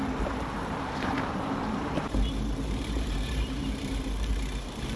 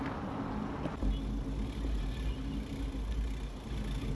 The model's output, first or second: first